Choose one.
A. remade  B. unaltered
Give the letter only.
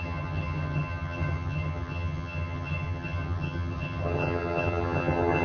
A